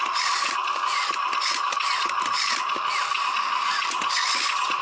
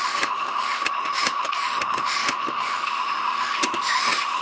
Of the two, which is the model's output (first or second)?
second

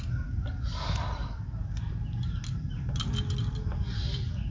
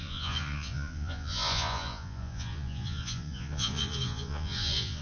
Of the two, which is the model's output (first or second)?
second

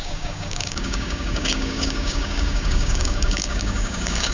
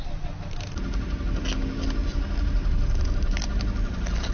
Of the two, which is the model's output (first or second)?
first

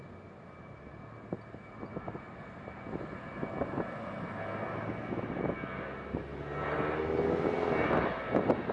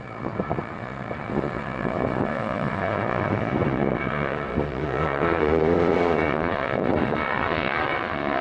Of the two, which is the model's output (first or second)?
second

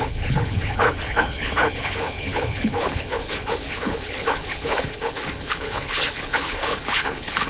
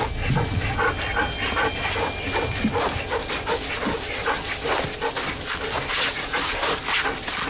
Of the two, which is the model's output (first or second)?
first